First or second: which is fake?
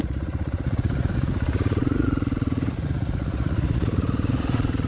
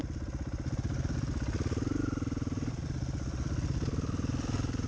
first